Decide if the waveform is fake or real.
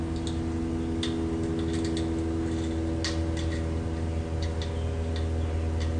real